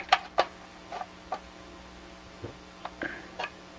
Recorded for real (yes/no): yes